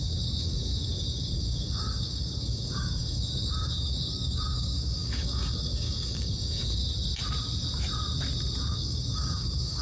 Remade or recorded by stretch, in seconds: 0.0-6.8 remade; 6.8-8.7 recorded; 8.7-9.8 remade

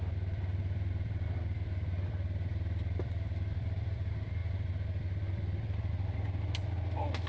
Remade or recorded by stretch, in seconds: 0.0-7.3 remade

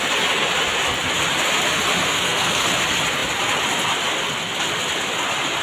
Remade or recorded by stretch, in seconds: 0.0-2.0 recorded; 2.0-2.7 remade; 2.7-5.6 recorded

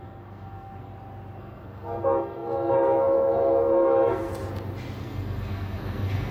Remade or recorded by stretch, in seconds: 0.0-0.9 remade; 0.9-1.4 recorded; 1.4-4.3 remade; 4.3-5.0 recorded; 5.0-6.3 remade